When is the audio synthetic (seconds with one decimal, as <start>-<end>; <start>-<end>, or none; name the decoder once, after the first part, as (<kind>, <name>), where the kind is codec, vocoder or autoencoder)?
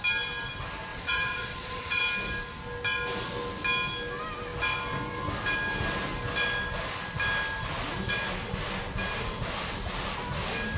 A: 0.9-2.0 (vocoder, Vocos)